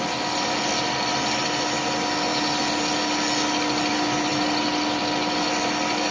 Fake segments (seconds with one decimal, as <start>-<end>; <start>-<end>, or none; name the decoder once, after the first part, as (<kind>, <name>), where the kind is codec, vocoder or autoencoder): none